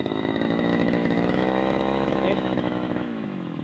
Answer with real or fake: fake